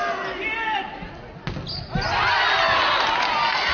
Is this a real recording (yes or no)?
yes